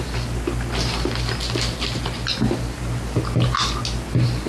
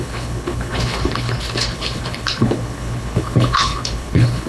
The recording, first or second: first